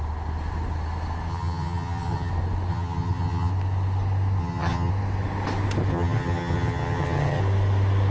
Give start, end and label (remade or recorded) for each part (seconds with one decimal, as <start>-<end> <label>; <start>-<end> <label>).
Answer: 0.0-1.3 recorded; 1.3-2.3 remade; 2.3-2.7 recorded; 2.7-3.5 remade; 3.5-4.4 recorded; 4.4-4.9 remade; 4.9-5.9 recorded; 5.9-7.4 remade; 7.4-8.1 recorded